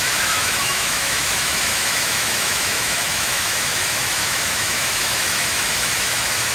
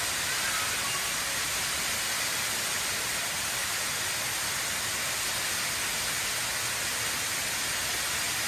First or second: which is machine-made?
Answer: first